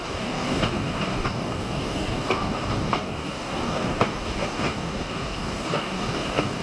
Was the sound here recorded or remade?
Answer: remade